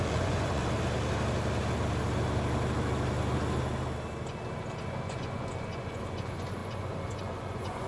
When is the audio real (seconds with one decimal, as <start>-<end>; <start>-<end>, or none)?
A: 0.6-4.8